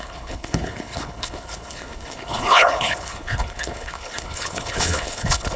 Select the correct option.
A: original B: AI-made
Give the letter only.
B